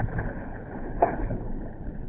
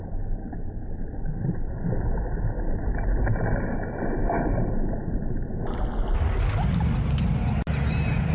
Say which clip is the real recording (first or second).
second